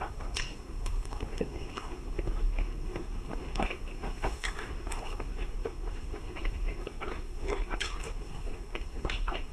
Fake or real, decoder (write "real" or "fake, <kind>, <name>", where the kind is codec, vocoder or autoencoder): fake, codec, SNAC